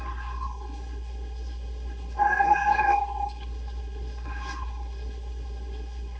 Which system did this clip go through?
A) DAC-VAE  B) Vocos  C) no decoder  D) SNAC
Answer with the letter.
D